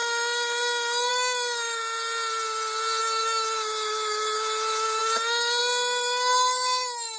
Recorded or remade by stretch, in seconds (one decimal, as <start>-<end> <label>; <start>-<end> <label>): 0.0-1.8 remade; 1.8-3.0 recorded; 3.0-7.2 remade